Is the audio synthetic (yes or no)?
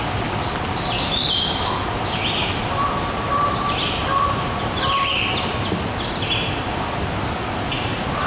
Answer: no